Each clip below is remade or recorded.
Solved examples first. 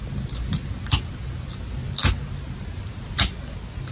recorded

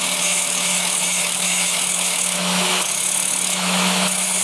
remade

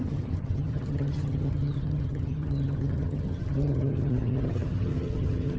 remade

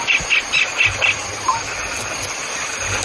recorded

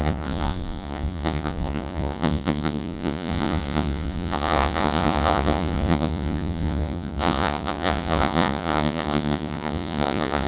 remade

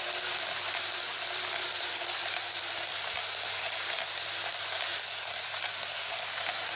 recorded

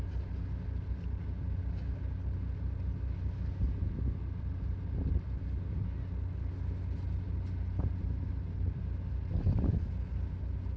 recorded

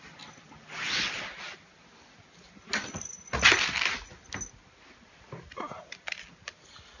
recorded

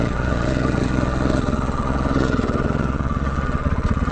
remade